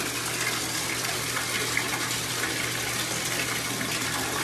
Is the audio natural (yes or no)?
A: yes